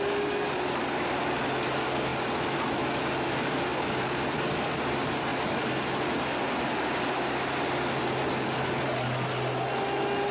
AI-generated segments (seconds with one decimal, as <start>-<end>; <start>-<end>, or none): 2.1-2.8; 3.7-4.7